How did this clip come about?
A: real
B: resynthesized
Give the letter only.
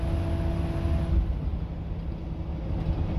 A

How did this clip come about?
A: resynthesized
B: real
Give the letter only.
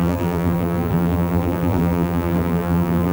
A